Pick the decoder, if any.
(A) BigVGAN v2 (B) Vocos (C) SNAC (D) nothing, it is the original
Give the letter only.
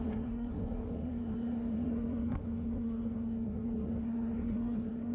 C